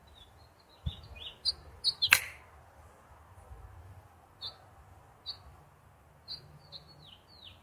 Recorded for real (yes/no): yes